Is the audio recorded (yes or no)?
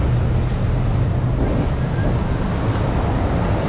yes